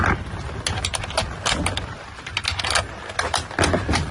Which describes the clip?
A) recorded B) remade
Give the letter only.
A